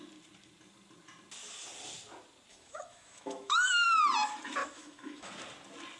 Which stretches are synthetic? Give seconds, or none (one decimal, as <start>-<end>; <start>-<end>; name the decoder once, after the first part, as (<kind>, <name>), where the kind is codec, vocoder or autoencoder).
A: 2.5-3.9 (autoencoder, DAC-VAE); 4.6-5.3